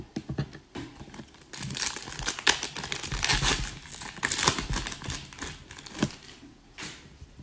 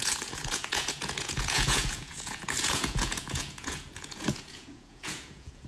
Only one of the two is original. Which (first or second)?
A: first